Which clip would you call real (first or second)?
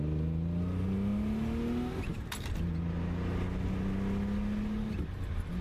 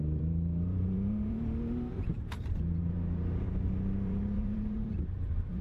first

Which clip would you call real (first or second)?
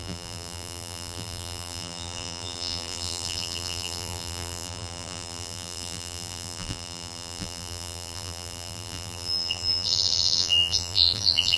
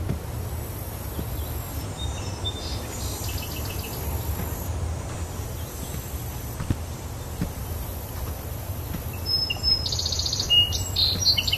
second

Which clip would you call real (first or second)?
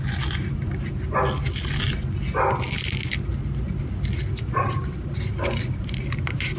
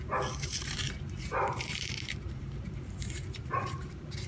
first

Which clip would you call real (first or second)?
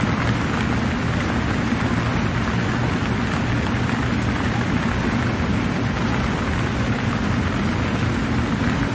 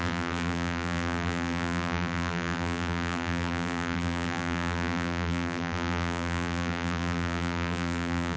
first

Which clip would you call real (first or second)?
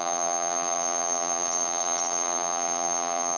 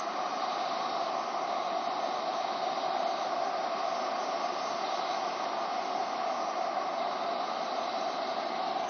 second